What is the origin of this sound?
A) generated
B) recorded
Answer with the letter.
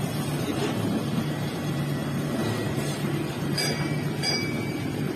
A